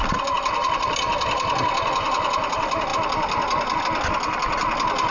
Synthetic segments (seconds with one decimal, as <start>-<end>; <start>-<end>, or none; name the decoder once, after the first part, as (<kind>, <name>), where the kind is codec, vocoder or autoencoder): 2.9-3.8 (vocoder, BigVGAN v2)